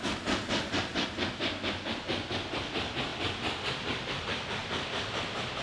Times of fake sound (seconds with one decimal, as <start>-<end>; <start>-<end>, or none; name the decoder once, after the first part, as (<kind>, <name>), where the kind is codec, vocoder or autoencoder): none